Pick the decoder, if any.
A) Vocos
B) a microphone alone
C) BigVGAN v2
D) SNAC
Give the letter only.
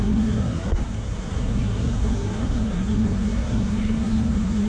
D